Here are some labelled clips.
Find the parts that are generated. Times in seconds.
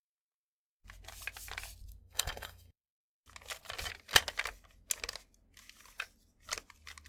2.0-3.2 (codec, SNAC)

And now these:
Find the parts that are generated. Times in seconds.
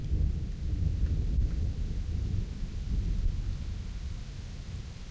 none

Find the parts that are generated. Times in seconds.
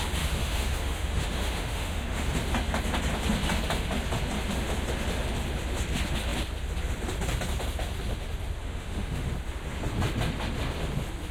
0.4-2.3 (autoencoder, DAC-VAE); 8.6-9.3